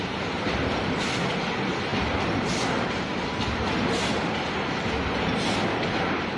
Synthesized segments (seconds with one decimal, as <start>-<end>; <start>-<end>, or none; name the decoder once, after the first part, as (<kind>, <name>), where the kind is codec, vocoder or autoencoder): none